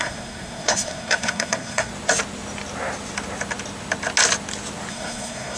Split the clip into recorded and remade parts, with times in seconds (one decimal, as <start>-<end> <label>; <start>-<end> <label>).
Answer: 0.0-1.9 remade; 1.9-4.9 recorded; 4.9-5.6 remade